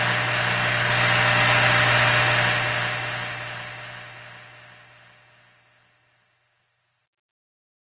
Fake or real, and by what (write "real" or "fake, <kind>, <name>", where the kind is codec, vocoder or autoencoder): real